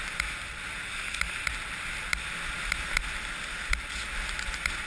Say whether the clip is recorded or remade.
recorded